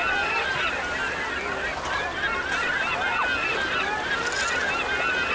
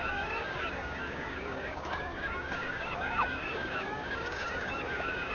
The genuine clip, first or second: first